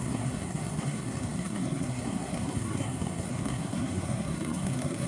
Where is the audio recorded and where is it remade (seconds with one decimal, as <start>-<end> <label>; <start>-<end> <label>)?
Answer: 0.0-5.1 remade